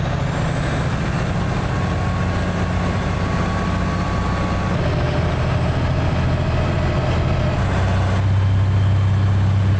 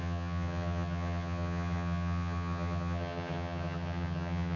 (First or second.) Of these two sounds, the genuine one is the first